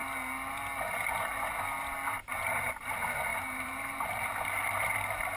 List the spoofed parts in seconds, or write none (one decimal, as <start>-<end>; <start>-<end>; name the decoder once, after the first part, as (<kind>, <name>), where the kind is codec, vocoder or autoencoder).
3.3-4.2 (vocoder, BigVGAN v2)